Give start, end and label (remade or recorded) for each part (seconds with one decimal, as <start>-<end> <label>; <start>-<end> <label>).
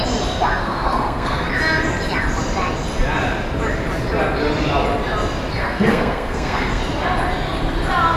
0.0-0.6 recorded; 0.6-1.5 remade; 1.5-5.6 recorded; 5.6-6.8 remade; 6.8-8.2 recorded